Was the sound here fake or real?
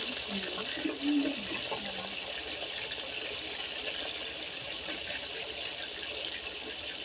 real